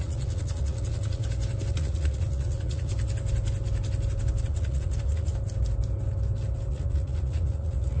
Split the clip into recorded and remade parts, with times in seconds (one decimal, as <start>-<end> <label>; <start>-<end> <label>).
0.0-1.2 remade; 1.2-1.7 recorded; 1.7-2.9 remade; 2.9-4.4 recorded; 4.4-5.3 remade; 5.3-6.7 recorded; 6.7-8.0 remade